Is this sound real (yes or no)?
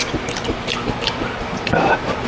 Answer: yes